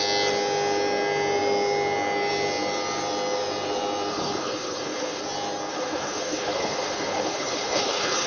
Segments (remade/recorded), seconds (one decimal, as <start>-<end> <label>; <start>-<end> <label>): 0.0-4.1 recorded; 4.1-5.2 remade; 5.2-5.7 recorded; 5.7-8.3 remade